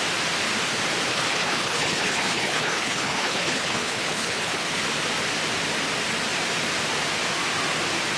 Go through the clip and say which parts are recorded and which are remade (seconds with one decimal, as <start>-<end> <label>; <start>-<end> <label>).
0.0-1.1 recorded; 1.1-4.8 remade; 4.8-8.2 recorded